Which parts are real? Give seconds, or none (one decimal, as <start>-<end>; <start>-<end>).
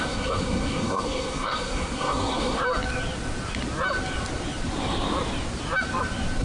2.6-6.4